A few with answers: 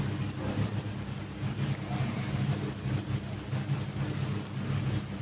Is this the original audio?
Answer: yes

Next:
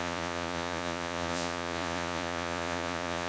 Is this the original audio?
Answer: no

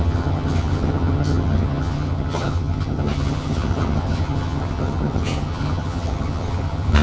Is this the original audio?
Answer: no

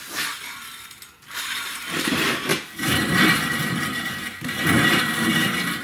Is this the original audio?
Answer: yes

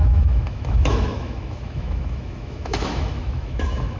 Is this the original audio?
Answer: no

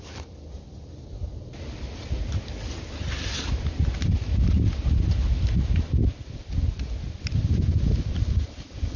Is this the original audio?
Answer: yes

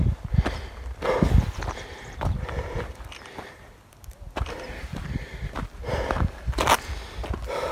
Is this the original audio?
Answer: yes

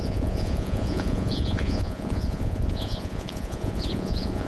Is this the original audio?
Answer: no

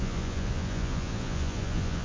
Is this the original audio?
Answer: no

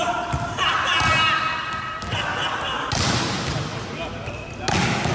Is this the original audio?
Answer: yes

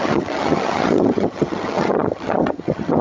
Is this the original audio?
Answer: no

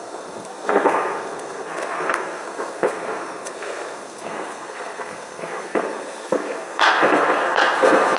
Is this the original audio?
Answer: no